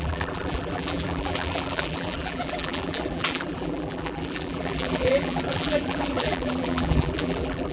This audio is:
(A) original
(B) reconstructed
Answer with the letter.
B